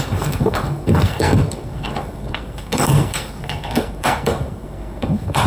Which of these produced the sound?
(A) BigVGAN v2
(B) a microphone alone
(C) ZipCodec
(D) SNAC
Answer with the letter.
D